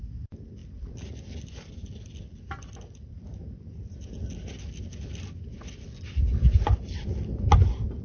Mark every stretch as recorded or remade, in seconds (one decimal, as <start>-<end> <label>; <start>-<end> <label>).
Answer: 0.0-8.0 recorded

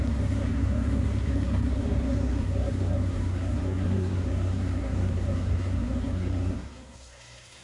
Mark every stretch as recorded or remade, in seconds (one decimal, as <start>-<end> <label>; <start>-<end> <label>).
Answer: 0.0-7.6 remade

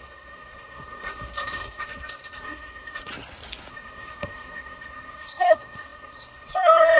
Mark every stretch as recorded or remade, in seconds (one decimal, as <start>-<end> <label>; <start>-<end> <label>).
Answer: 0.0-3.1 remade; 3.1-3.7 recorded; 3.7-7.0 remade

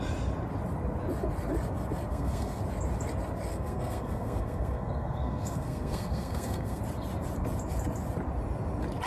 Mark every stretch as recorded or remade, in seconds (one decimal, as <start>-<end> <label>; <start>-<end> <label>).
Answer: 0.0-2.1 recorded; 2.1-2.6 remade; 2.6-3.5 recorded; 3.5-6.8 remade; 6.8-9.1 recorded

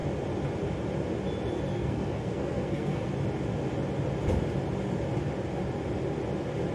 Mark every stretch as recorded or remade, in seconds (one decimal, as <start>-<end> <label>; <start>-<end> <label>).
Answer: 0.0-1.7 recorded; 1.7-3.1 remade; 3.1-6.7 recorded

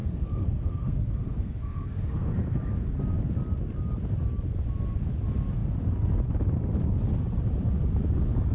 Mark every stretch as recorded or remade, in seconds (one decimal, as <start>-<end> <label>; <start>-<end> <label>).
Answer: 0.0-2.3 remade; 2.3-8.5 recorded